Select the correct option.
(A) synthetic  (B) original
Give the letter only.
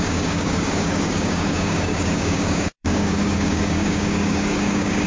A